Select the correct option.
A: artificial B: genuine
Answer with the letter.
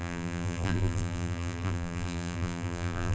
A